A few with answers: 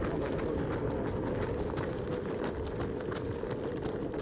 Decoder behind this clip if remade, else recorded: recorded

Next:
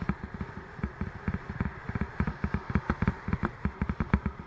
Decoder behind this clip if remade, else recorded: recorded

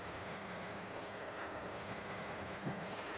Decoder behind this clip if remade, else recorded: remade, autoencoder, DAC-VAE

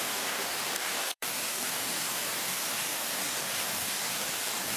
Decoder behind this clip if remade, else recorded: remade, codec, DAC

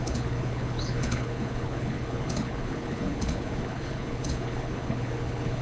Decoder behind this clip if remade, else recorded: remade, codec, HILCodec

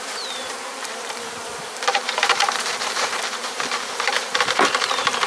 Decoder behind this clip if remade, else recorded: remade, vocoder, BigVGAN v2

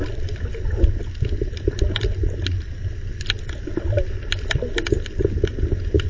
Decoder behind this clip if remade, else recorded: recorded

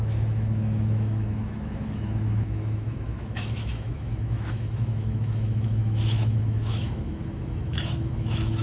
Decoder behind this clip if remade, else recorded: remade, autoencoder, DAC-VAE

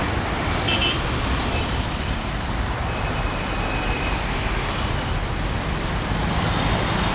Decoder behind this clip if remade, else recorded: recorded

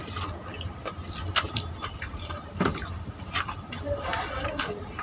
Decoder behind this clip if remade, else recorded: recorded